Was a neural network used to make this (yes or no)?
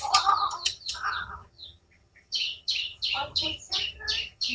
yes